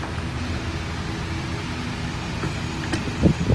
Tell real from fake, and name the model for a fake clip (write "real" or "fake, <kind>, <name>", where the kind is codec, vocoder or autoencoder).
real